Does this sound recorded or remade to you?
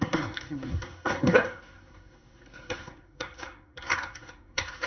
remade